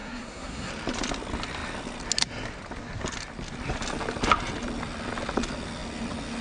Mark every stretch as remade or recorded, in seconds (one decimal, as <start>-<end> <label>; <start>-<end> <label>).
0.0-0.7 remade; 0.7-6.4 recorded